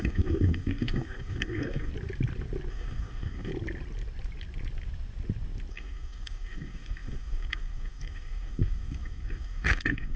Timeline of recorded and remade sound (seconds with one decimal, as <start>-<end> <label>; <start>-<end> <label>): 0.0-1.9 remade; 1.9-2.7 recorded; 2.7-3.5 remade; 3.5-5.7 recorded; 5.7-10.2 remade